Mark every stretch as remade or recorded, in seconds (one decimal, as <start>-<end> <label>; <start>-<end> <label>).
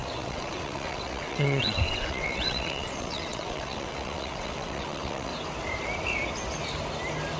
0.0-5.3 remade; 5.3-7.4 recorded